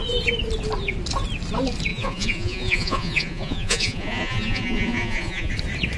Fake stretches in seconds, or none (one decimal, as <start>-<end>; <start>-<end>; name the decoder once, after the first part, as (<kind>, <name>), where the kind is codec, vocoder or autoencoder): 1.9-5.5 (vocoder, Vocos)